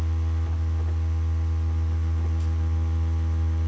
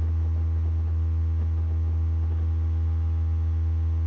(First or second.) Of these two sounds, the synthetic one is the first